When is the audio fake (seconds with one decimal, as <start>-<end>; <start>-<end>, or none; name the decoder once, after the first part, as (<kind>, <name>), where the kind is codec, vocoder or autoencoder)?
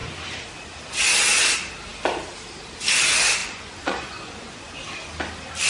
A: 3.4-4.7 (vocoder, Vocos)